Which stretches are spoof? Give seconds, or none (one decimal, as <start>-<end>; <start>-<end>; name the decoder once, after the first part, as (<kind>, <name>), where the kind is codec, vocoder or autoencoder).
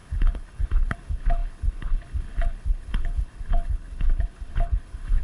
0.0-5.2 (codec, HILCodec)